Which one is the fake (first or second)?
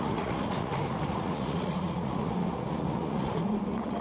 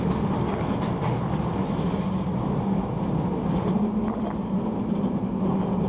first